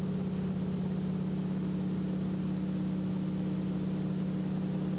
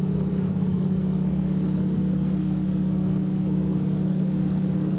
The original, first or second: first